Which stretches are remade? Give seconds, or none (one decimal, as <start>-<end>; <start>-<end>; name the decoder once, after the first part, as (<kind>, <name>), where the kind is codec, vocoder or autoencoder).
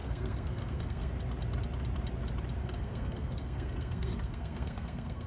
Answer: 0.0-1.1 (codec, SNAC); 2.6-5.3